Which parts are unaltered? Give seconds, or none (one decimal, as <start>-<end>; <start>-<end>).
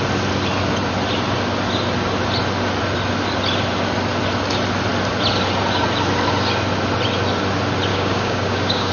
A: 0.0-7.9